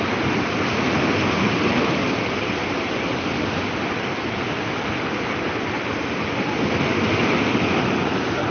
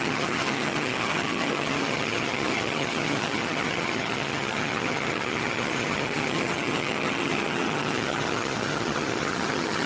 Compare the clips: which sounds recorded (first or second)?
first